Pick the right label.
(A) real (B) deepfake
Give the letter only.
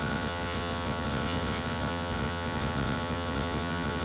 B